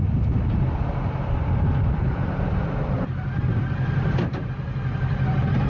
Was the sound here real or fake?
real